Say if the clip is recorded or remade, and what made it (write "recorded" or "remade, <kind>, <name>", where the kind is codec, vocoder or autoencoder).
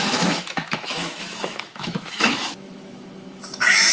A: remade, autoencoder, DAC-VAE